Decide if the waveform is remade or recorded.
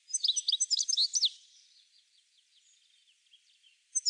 recorded